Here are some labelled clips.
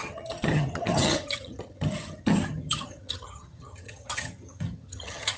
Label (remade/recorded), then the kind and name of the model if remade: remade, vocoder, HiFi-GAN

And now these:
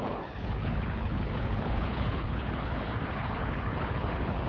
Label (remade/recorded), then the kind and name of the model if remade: remade, codec, HILCodec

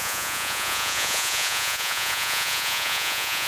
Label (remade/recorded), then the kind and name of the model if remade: remade, vocoder, Vocos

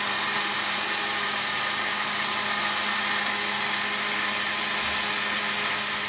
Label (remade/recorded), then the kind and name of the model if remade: recorded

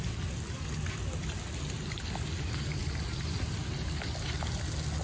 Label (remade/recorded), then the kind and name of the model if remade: recorded